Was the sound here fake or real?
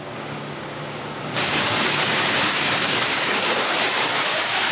fake